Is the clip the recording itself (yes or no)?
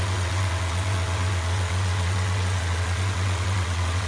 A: no